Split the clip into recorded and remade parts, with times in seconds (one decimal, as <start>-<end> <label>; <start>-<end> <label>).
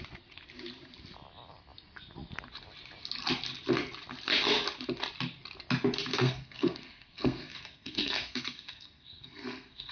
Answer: 0.0-6.1 recorded; 6.1-9.9 remade